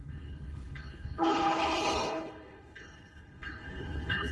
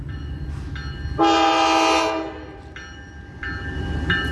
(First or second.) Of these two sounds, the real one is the second